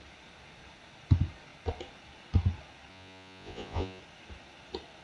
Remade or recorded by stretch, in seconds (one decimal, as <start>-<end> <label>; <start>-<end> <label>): 0.0-2.9 recorded; 2.9-4.0 remade; 4.0-5.0 recorded